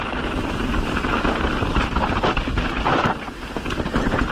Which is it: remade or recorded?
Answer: remade